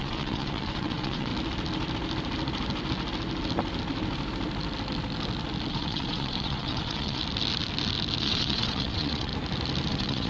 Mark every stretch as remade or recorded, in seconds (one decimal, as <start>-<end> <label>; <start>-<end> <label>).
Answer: 0.0-1.3 remade; 1.3-5.7 recorded; 5.7-7.2 remade; 7.2-8.2 recorded; 8.2-9.3 remade; 9.3-9.9 recorded; 9.9-10.3 remade